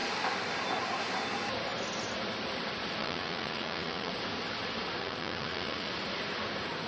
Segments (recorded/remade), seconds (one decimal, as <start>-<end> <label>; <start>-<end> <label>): 0.0-3.0 recorded; 3.0-4.1 remade; 4.1-5.0 recorded; 5.0-6.0 remade; 6.0-6.9 recorded

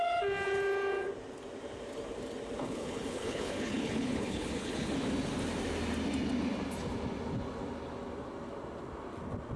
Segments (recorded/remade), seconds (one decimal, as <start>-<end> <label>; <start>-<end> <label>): 0.0-2.6 recorded; 2.6-4.9 remade; 4.9-9.6 recorded

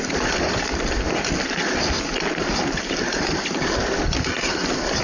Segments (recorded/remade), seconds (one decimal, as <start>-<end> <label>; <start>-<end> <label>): 0.0-5.0 recorded

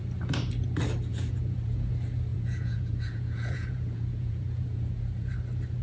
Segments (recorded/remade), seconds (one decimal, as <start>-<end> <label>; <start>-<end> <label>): 0.0-1.1 recorded; 1.1-1.9 remade; 1.9-2.3 recorded; 2.3-5.3 remade; 5.3-5.8 recorded

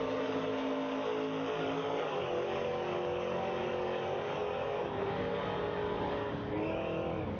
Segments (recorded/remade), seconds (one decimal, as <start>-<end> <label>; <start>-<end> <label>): 0.0-0.5 remade; 0.5-1.6 recorded; 1.6-7.4 remade

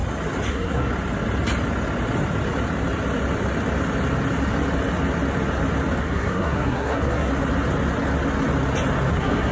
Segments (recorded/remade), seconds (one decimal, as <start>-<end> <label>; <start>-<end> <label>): 0.0-0.5 recorded; 0.5-0.9 remade; 0.9-6.0 recorded; 6.0-7.3 remade; 7.3-9.1 recorded; 9.1-9.5 remade

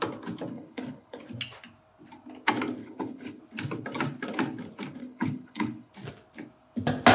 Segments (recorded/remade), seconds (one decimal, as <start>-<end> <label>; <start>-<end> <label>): 0.0-0.5 recorded; 0.5-1.2 remade; 1.2-2.8 recorded; 2.8-3.4 remade; 3.4-5.0 recorded; 5.0-5.9 remade; 5.9-7.1 recorded

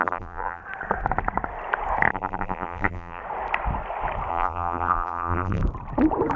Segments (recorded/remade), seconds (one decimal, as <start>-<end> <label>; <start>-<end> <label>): 0.0-0.6 remade; 0.6-2.1 recorded; 2.1-3.2 remade; 3.2-4.3 recorded; 4.3-5.6 remade; 5.6-6.4 recorded